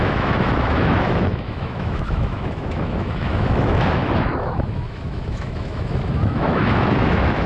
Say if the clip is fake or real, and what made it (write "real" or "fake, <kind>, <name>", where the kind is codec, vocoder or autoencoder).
fake, autoencoder, DAC-VAE